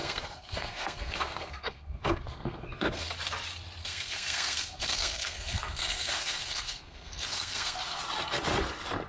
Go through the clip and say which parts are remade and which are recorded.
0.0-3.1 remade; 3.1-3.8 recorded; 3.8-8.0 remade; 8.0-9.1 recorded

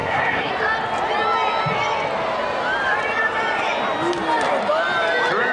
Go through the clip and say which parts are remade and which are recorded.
0.0-0.5 remade; 0.5-5.5 recorded